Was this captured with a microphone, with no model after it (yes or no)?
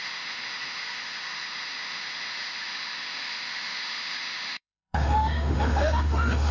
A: no